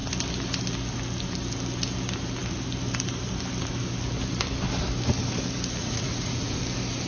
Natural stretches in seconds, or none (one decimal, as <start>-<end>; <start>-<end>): 0.0-5.8; 6.6-7.1